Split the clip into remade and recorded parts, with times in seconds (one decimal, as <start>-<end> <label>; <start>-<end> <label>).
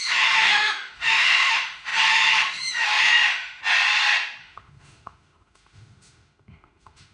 0.0-3.6 remade; 3.6-4.4 recorded; 4.4-7.1 remade